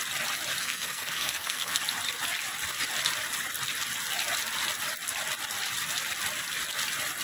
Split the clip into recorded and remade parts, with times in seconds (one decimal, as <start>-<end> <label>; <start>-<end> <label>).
0.0-0.6 recorded; 0.6-1.8 remade; 1.8-7.2 recorded